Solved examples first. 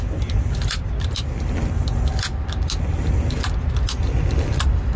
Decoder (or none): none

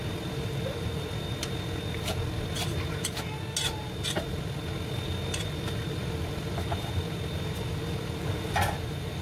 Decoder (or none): none